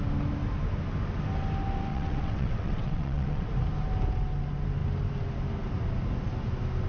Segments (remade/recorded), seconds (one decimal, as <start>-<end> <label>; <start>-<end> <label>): 0.0-1.9 recorded; 1.9-3.5 remade; 3.5-6.9 recorded